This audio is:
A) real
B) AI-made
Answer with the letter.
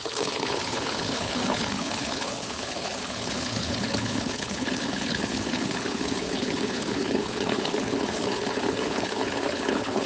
B